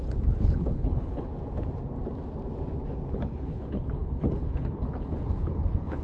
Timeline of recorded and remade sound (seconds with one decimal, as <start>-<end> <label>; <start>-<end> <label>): 0.0-1.3 remade; 1.3-3.1 recorded; 3.1-6.0 remade

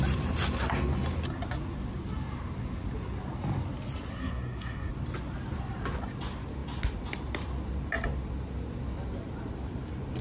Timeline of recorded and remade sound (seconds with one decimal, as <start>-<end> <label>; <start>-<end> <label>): 0.0-4.1 recorded; 4.1-4.9 remade; 4.9-10.2 recorded

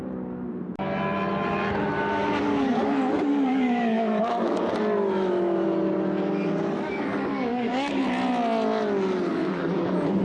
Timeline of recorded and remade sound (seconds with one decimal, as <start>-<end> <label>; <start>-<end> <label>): 0.0-2.2 recorded; 2.2-4.7 remade; 4.7-7.1 recorded; 7.1-8.0 remade; 8.0-9.3 recorded; 9.3-10.2 remade

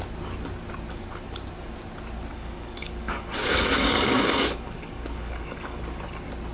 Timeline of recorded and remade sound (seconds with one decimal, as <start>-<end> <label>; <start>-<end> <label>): 0.0-2.3 recorded; 2.3-5.8 remade; 5.8-6.5 recorded